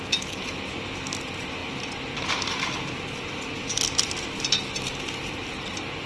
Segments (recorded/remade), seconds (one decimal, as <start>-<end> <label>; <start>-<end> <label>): 0.0-6.1 recorded